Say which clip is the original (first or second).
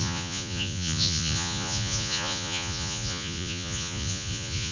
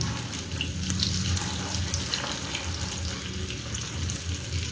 second